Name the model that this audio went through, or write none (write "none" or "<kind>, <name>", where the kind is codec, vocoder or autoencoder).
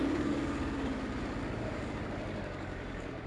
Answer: codec, DAC